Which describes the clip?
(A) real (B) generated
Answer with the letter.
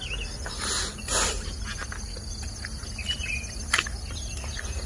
A